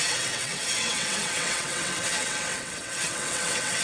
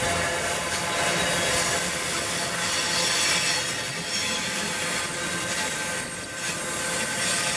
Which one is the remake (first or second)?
first